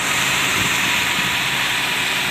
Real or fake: fake